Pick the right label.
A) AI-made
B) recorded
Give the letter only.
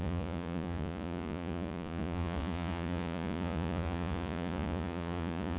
A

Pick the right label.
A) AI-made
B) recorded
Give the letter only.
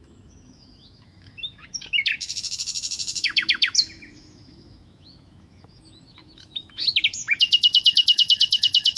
A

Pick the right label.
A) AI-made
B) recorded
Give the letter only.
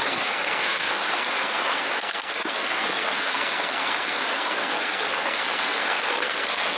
A